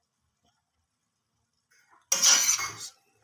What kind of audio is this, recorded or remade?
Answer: recorded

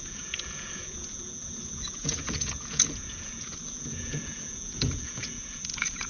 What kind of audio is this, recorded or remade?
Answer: remade